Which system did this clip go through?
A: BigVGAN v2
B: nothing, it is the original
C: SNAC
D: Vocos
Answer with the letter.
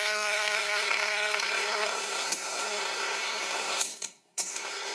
C